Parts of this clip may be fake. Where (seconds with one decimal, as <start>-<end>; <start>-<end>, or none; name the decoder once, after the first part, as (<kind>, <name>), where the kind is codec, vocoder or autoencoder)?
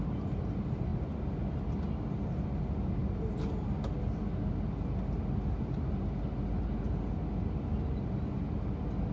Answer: none